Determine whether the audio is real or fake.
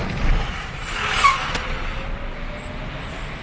real